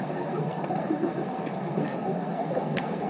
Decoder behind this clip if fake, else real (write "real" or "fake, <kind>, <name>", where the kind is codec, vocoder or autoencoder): fake, codec, SNAC